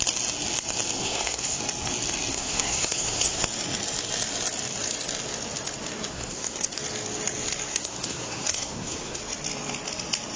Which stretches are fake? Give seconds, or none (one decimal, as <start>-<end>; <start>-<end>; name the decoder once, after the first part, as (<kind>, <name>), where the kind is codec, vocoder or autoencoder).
1.0-1.6 (codec, SNAC); 2.3-3.4; 6.1-6.8; 7.7-9.2